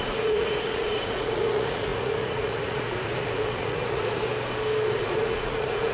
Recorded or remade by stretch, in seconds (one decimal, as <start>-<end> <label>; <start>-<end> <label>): 0.0-4.3 remade; 4.3-4.9 recorded; 4.9-5.9 remade